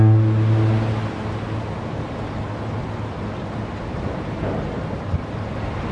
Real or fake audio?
real